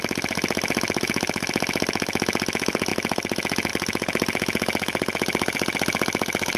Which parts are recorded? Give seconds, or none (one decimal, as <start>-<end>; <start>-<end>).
0.0-6.6